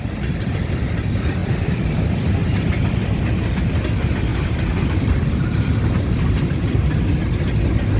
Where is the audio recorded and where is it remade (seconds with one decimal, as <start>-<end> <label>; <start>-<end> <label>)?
0.0-4.3 recorded; 4.3-6.9 remade; 6.9-8.0 recorded